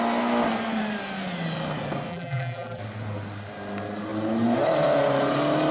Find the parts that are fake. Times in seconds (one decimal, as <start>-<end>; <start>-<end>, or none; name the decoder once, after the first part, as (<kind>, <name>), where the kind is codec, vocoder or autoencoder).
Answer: 2.1-2.8 (vocoder, BigVGAN v2)